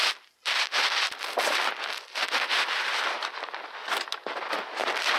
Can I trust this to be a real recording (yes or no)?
yes